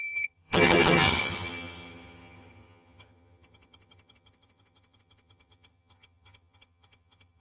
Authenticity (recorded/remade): remade